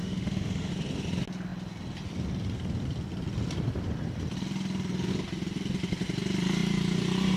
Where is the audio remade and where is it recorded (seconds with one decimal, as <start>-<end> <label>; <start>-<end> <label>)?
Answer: 0.0-0.7 remade; 0.7-7.4 recorded